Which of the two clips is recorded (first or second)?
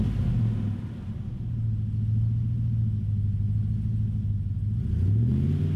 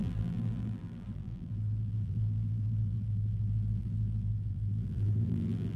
first